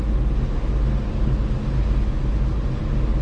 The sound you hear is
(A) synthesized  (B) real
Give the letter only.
B